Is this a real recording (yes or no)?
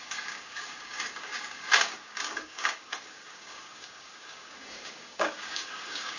no